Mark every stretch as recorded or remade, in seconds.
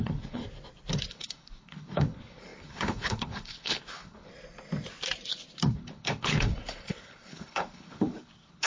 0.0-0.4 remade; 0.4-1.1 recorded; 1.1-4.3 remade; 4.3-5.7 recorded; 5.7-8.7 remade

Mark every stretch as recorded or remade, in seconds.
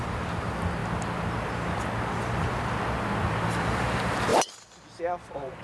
0.0-5.6 recorded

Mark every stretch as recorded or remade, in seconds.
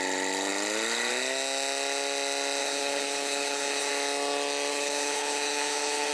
0.0-2.6 recorded; 2.6-3.9 remade; 3.9-4.7 recorded; 4.7-6.1 remade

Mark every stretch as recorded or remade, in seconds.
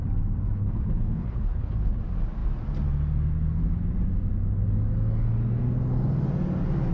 0.0-0.6 recorded; 0.6-2.0 remade; 2.0-6.9 recorded